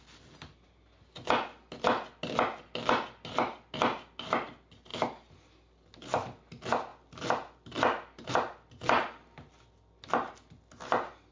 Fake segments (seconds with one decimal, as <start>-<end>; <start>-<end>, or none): none